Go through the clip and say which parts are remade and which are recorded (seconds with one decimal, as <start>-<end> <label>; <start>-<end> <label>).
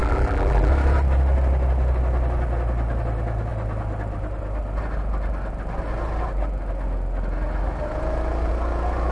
0.0-0.7 remade; 0.7-9.1 recorded